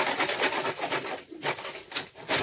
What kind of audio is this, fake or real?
real